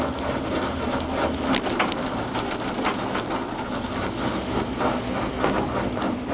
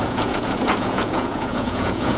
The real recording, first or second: first